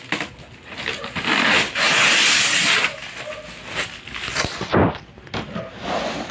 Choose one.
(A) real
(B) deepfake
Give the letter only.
A